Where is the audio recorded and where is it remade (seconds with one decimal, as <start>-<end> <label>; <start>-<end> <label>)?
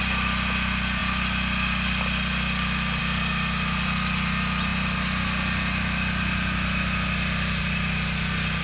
0.0-8.6 recorded